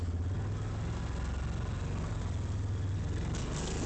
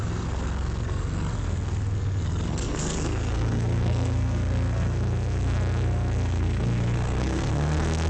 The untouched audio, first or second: first